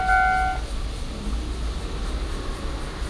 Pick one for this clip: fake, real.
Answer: real